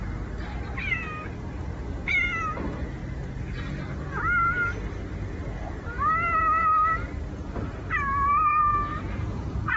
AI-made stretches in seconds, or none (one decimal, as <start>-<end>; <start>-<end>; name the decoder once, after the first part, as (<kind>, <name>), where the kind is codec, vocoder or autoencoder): 8.9-9.8 (vocoder, Vocos)